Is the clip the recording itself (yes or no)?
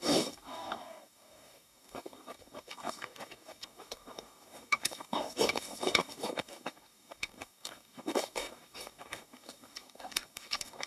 no